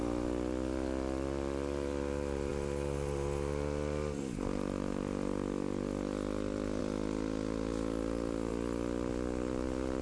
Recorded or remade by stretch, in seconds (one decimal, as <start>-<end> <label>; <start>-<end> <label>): 0.0-10.0 recorded